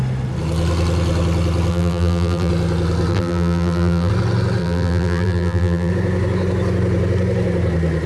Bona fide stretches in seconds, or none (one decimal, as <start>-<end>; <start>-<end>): 0.0-1.7; 2.5-3.1; 4.1-4.6; 5.9-8.1